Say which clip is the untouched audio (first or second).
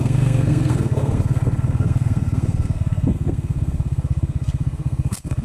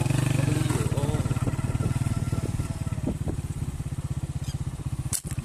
second